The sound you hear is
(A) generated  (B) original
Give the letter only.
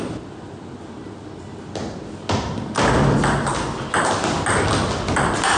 B